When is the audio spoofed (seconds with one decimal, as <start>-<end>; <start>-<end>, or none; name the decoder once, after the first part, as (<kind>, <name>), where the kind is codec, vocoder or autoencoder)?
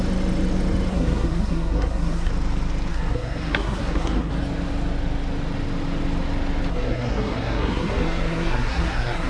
0.9-2.3 (codec, SNAC); 2.9-4.3; 6.7-9.3